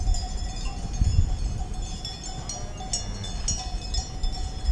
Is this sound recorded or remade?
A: recorded